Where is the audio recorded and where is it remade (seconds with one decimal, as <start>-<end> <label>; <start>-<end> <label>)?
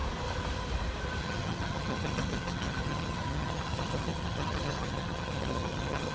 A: 0.0-1.2 recorded; 1.2-6.1 remade